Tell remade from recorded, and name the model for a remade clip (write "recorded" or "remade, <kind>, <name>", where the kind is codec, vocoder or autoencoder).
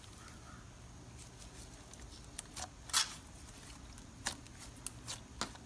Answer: recorded